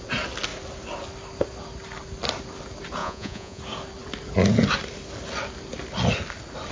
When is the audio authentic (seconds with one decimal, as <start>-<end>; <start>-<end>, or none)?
0.0-3.0; 3.6-6.7